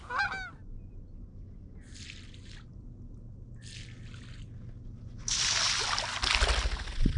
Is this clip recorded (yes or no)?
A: yes